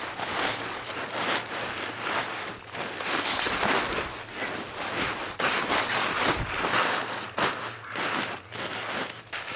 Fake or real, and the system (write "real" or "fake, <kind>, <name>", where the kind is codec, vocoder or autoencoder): real